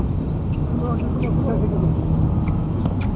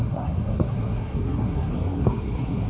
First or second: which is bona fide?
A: first